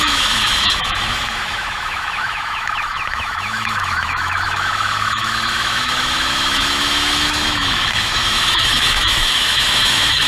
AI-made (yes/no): yes